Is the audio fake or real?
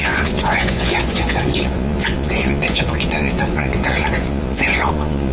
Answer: fake